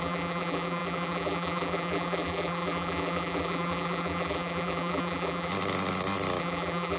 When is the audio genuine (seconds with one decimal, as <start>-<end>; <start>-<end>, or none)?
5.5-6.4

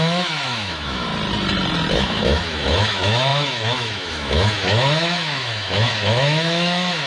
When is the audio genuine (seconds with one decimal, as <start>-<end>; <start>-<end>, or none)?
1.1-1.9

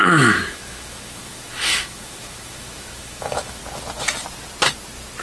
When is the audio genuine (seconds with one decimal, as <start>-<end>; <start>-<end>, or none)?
3.6-5.2

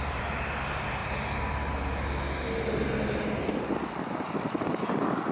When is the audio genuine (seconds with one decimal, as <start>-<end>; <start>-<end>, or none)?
0.0-5.3

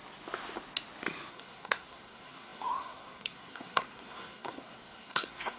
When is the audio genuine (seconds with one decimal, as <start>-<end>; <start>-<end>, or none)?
0.0-1.3

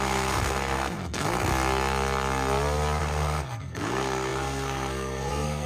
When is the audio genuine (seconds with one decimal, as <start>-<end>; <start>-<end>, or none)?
1.5-3.0

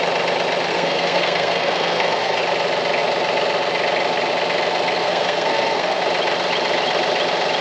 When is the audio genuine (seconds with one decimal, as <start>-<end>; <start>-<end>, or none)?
0.0-0.7; 2.4-5.0; 6.0-7.6

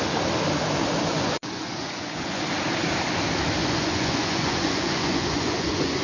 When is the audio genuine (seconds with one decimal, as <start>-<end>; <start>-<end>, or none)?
0.0-1.1; 2.4-3.6